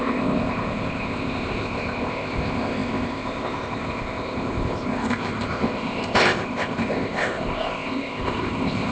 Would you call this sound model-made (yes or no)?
yes